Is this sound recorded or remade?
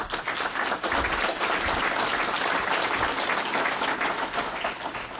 recorded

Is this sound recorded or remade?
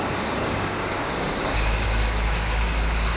remade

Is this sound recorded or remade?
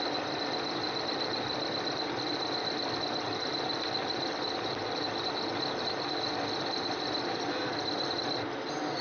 recorded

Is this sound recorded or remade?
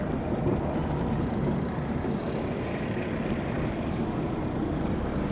recorded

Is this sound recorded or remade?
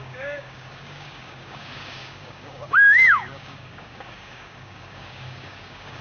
remade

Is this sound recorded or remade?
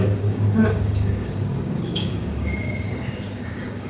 remade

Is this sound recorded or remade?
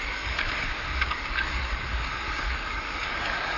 remade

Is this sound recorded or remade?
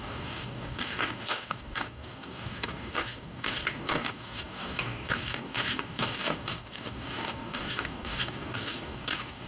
remade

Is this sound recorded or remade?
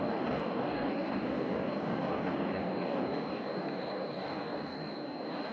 remade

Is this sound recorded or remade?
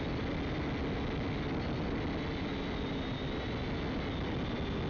recorded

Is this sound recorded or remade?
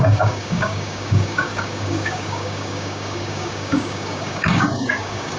remade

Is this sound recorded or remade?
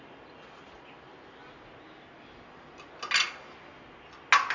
recorded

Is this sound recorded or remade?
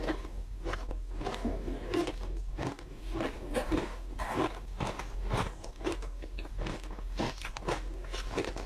remade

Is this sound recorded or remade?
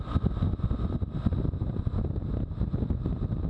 recorded